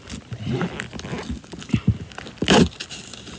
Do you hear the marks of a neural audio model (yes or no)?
no